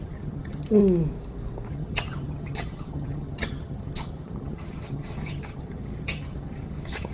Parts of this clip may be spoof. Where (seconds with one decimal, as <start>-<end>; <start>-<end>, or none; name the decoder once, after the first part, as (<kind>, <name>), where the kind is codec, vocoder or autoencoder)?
0.0-0.8 (vocoder, HiFi-GAN); 1.7-7.1